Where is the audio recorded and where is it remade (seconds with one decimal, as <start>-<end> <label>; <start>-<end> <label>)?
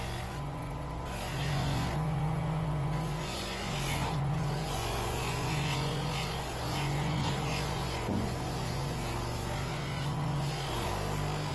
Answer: 0.0-10.9 remade; 10.9-11.5 recorded